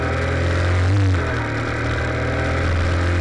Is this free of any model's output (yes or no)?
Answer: yes